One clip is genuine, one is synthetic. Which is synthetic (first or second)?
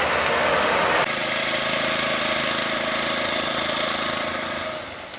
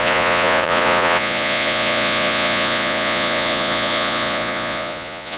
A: second